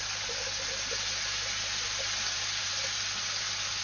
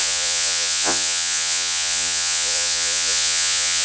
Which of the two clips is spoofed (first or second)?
second